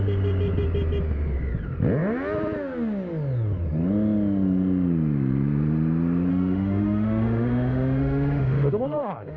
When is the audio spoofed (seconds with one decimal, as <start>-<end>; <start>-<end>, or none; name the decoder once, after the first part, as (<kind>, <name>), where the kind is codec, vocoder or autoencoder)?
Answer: 6.3-9.4 (autoencoder, DAC-VAE)